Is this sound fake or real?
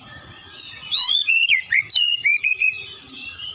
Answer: fake